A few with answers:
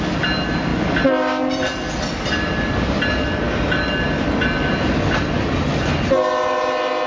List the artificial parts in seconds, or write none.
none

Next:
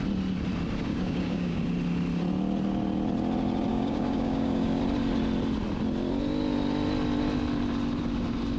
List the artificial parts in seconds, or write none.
0.9-1.6 (codec, DAC); 3.7-4.8

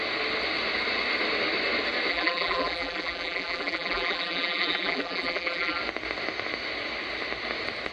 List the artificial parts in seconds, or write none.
2.1-5.8 (vocoder, BigVGAN v2)

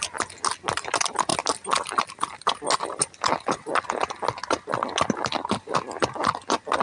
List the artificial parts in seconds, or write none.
none

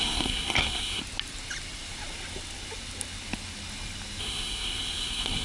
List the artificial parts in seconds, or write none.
0.0-1.0 (codec, SNAC); 4.2-5.4

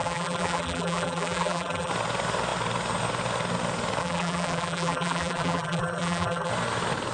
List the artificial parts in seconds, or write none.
0.0-1.9 (vocoder, BigVGAN v2); 4.0-6.5

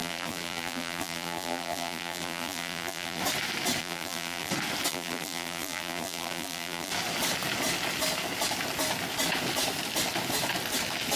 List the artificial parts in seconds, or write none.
0.0-3.2 (vocoder, BigVGAN v2); 3.8-4.5; 4.9-6.9

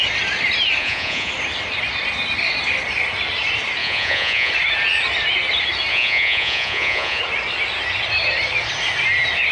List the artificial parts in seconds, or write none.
0.8-1.3 (vocoder, Vocos); 3.8-4.5; 5.9-7.2